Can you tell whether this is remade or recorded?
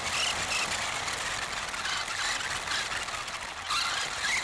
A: recorded